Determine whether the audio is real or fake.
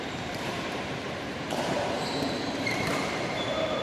fake